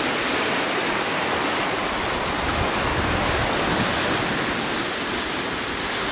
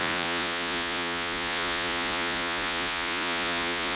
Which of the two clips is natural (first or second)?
first